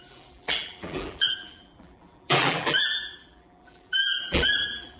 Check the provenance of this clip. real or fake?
fake